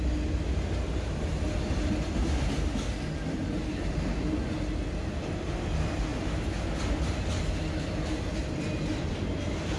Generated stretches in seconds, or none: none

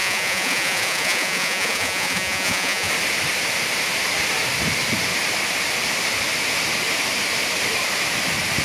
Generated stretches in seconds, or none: 0.0-2.9 (vocoder, Vocos)

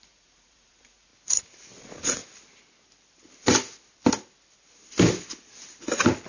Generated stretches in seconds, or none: 0.0-1.1 (vocoder, Vocos); 1.8-2.2

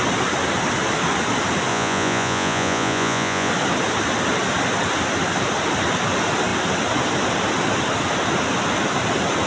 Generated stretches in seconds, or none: 1.7-3.5 (vocoder, Vocos)

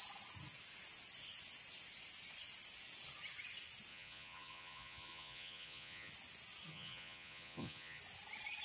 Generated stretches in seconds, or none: 3.9-6.1 (vocoder, Vocos); 6.7-8.0

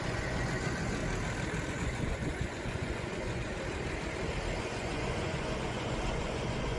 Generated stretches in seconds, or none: 0.0-1.0 (vocoder, Vocos); 1.7-3.5; 4.6-6.8

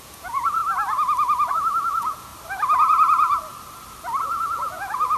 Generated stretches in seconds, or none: 0.0-0.6 (vocoder, Vocos); 1.5-2.3; 4.2-5.2